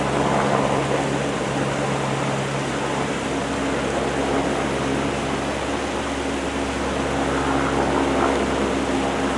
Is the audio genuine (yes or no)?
yes